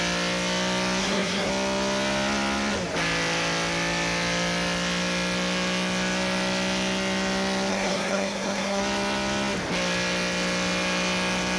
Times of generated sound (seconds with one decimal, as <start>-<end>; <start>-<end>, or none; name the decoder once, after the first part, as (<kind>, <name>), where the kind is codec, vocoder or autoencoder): 1.0-1.5 (codec, SNAC); 7.7-8.8